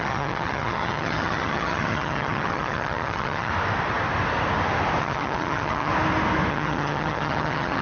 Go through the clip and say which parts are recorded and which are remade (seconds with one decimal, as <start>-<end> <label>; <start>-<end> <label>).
0.0-3.5 remade; 3.5-5.0 recorded; 5.0-5.9 remade; 5.9-6.5 recorded; 6.5-7.8 remade